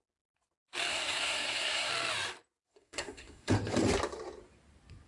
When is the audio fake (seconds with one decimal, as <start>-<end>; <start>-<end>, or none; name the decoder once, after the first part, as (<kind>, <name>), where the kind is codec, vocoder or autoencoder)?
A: 0.9-1.9 (codec, SNAC); 2.7-3.5